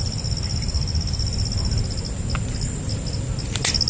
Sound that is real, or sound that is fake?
real